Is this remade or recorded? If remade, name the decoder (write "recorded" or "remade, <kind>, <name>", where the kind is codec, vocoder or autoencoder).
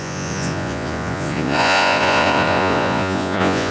remade, vocoder, Vocos